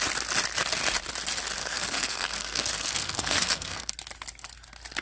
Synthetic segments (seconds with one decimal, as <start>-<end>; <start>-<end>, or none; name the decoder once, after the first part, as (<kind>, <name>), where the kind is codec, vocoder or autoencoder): 1.6-3.9 (codec, SNAC)